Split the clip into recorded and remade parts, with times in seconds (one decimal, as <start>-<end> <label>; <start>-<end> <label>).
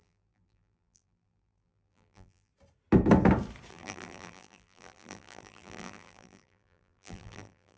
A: 0.0-2.5 remade; 2.5-3.7 recorded; 3.7-7.8 remade